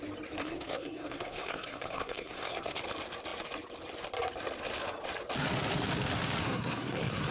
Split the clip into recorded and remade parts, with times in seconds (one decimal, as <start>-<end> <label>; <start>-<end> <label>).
0.0-0.4 recorded; 0.4-2.8 remade; 2.8-6.4 recorded; 6.4-7.3 remade